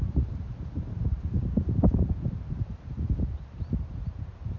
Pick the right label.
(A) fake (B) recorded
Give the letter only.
A